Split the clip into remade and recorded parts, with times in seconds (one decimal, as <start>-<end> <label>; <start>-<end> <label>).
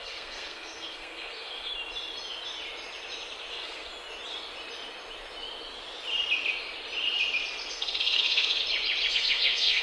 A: 0.0-1.7 remade; 1.7-3.5 recorded; 3.5-3.9 remade; 3.9-7.7 recorded; 7.7-8.6 remade; 8.6-9.1 recorded; 9.1-9.8 remade